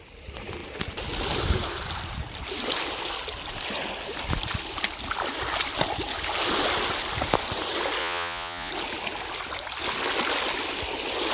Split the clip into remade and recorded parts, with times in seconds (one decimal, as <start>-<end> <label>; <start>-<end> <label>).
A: 0.0-8.0 recorded; 8.0-8.7 remade; 8.7-11.3 recorded